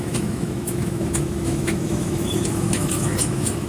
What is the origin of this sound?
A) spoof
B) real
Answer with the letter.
A